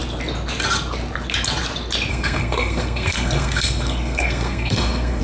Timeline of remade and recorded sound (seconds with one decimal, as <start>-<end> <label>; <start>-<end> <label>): 0.0-2.1 recorded; 2.1-5.2 remade